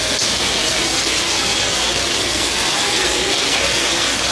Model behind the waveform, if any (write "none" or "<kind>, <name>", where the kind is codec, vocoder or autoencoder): codec, SNAC